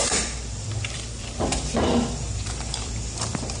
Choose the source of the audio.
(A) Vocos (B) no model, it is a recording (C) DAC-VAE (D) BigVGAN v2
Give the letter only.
D